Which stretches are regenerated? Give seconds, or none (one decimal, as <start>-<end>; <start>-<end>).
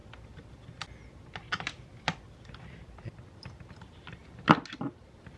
none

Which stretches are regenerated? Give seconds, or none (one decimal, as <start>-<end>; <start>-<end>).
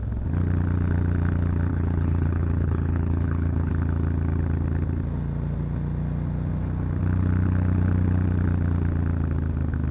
1.7-3.7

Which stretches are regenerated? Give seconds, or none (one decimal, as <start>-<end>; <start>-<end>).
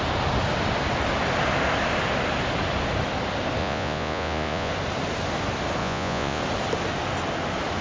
3.6-4.7; 5.8-6.4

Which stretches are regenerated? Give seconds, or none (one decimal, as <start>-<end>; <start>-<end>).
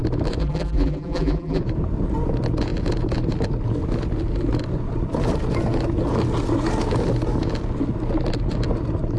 0.4-1.6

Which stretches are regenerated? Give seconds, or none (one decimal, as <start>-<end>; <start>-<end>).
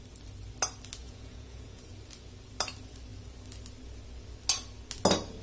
1.0-1.9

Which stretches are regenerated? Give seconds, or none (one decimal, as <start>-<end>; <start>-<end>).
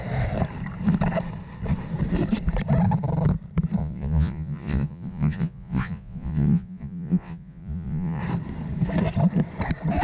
3.8-8.2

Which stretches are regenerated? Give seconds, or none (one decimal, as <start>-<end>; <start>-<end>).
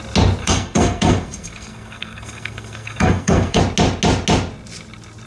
0.4-3.6